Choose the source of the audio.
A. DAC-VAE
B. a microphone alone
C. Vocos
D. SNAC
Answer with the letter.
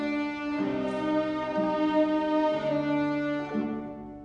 B